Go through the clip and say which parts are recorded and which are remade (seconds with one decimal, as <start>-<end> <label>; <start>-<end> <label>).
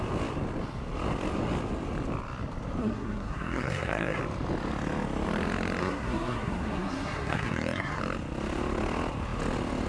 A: 0.0-2.8 recorded; 2.8-4.2 remade; 4.2-5.8 recorded; 5.8-8.0 remade; 8.0-9.9 recorded